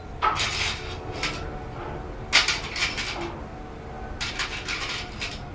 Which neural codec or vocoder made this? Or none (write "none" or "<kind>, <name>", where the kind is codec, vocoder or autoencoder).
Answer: none